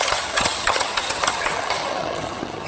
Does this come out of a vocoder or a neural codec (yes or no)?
yes